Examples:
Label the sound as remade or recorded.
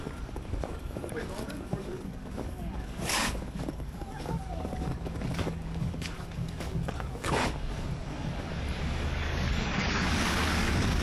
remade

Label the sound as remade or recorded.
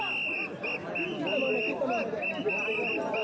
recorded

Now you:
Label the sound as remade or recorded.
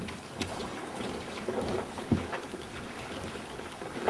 remade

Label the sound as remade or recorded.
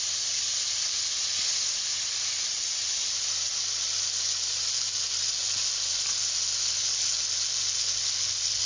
recorded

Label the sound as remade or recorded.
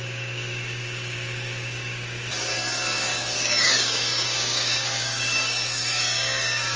remade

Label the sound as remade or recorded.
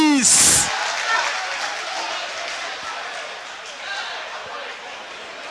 recorded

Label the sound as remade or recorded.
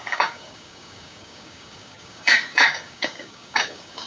remade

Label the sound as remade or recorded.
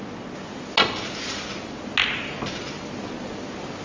recorded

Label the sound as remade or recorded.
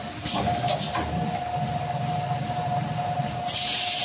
recorded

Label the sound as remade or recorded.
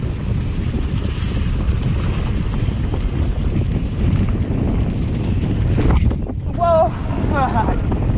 recorded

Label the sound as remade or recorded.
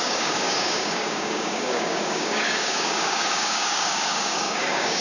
remade